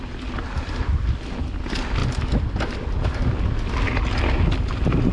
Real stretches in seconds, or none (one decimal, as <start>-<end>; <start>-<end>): 0.0-5.1